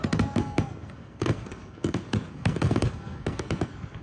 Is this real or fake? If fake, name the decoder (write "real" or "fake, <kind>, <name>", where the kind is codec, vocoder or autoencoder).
fake, codec, SNAC